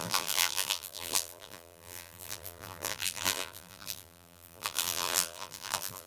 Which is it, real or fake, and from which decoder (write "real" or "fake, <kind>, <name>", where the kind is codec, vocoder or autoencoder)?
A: fake, vocoder, BigVGAN v2